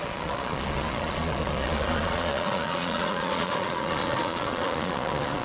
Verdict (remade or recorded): remade